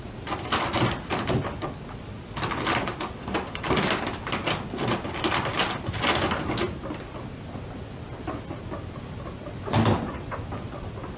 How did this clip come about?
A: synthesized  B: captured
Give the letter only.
B